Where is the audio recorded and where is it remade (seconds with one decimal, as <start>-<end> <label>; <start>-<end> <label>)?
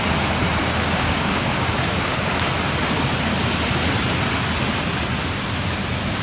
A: 0.0-0.6 recorded; 0.6-2.3 remade; 2.3-6.2 recorded